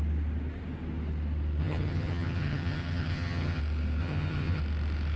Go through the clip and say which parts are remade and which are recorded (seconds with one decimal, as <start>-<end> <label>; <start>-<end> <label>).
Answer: 0.0-1.6 recorded; 1.6-3.6 remade; 3.6-4.0 recorded; 4.0-4.6 remade; 4.6-5.2 recorded